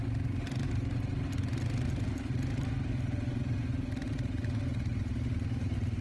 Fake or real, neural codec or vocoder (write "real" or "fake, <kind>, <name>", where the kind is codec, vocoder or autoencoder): real